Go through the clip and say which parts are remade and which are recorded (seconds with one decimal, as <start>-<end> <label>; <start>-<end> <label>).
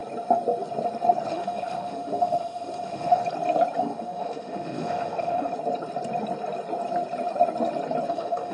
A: 0.0-1.3 recorded; 1.3-3.2 remade; 3.2-3.8 recorded; 3.8-5.5 remade; 5.5-8.1 recorded; 8.1-8.5 remade